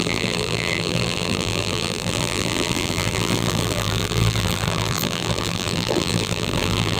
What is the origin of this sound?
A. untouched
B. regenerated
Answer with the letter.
B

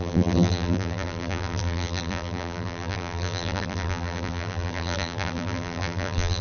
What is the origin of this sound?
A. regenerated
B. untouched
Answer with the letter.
A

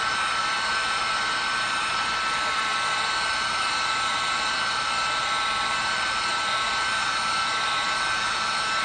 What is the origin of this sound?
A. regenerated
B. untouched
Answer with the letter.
A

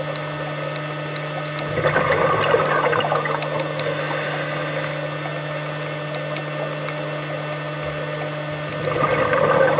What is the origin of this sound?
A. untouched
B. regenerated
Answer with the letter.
A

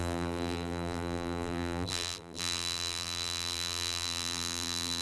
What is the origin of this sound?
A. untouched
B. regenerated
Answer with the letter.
B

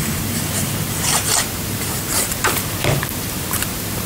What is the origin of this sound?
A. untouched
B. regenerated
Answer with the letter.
B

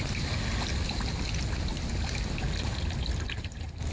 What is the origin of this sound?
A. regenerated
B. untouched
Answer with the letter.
B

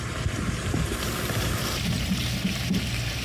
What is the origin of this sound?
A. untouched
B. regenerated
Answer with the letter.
B